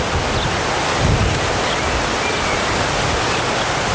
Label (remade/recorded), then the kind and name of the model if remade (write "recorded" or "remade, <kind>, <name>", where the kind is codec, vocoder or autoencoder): recorded